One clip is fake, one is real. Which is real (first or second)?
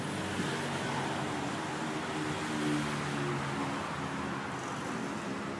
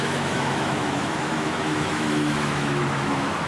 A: first